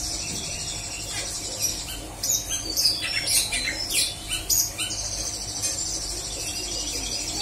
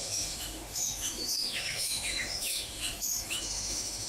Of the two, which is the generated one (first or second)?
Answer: second